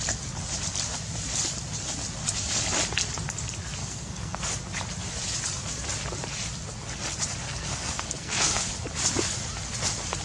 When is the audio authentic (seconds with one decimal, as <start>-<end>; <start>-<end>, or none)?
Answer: 0.0-3.8; 4.4-7.4; 8.7-10.2